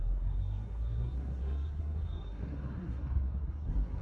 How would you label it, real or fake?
fake